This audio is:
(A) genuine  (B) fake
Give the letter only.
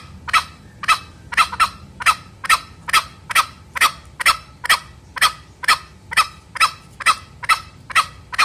A